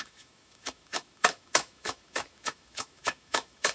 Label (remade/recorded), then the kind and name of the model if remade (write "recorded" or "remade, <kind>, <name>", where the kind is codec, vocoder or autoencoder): remade, autoencoder, DAC-VAE